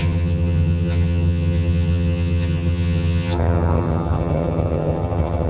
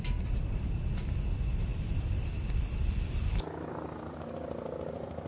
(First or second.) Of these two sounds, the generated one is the first